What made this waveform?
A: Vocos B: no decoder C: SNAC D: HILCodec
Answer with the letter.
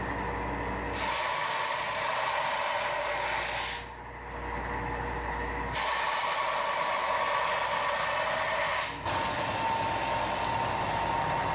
B